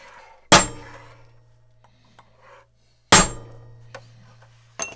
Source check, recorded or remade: recorded